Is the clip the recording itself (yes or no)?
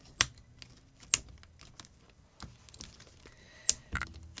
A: yes